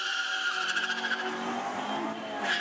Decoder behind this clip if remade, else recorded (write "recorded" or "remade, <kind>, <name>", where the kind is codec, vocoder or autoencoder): recorded